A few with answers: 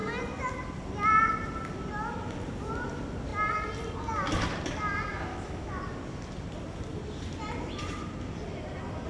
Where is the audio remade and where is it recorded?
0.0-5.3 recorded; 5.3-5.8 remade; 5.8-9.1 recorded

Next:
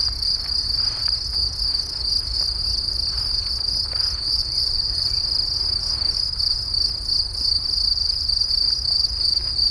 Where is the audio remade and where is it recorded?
0.0-4.4 recorded; 4.4-5.2 remade; 5.2-9.7 recorded